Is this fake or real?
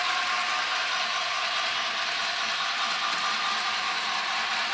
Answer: real